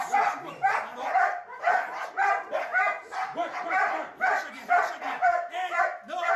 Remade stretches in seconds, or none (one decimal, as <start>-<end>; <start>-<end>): none